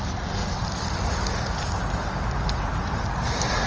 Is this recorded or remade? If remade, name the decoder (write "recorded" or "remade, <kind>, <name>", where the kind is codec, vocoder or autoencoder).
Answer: recorded